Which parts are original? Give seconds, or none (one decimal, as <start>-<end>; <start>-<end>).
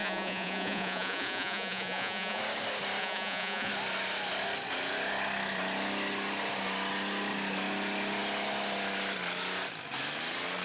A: 2.4-3.0; 3.7-10.6